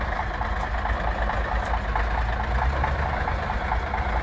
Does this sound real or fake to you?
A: real